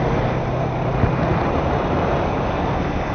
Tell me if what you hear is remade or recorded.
recorded